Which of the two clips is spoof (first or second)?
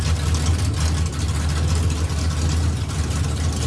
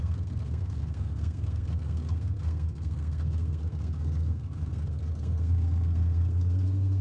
second